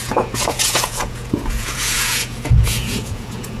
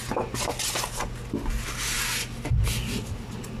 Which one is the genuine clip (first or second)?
second